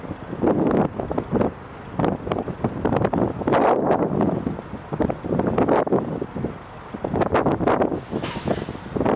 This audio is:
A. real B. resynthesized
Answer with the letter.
A